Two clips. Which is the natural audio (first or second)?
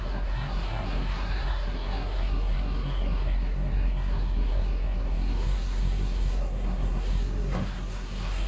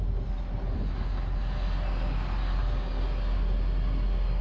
second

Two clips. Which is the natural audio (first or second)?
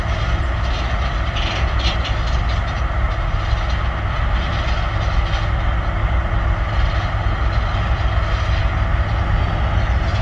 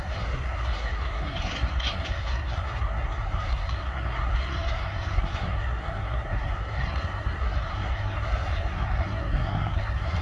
first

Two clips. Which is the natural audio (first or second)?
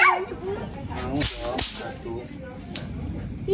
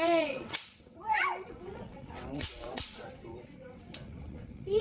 first